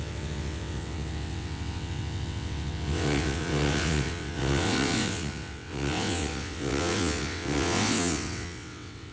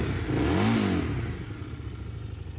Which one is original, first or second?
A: second